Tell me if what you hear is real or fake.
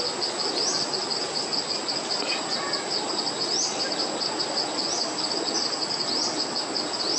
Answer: real